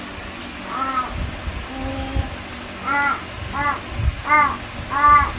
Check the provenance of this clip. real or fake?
real